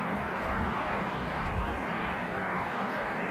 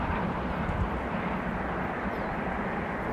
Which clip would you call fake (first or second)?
first